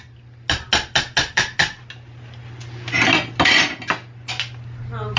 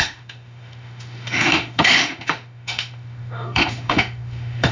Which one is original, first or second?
first